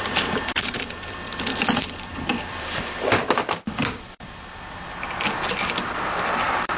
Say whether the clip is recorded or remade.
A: remade